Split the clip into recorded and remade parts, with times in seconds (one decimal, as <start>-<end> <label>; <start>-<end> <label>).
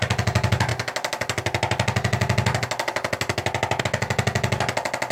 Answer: 0.0-5.1 recorded